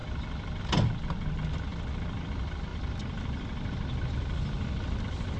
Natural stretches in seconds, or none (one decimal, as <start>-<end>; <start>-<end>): 0.0-2.7; 5.0-5.4